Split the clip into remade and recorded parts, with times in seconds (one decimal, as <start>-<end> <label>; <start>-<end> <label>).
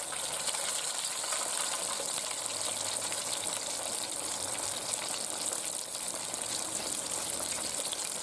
0.0-8.2 recorded